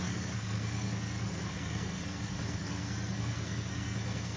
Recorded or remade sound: remade